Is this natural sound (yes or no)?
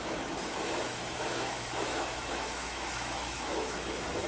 no